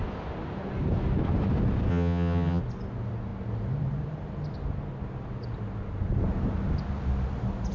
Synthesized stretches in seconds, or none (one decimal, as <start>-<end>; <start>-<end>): 1.9-2.6